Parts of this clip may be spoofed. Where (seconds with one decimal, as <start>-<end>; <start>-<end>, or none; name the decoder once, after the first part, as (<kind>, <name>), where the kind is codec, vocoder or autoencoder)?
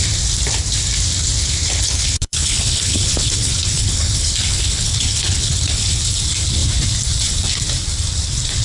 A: 1.6-6.0 (codec, HILCodec)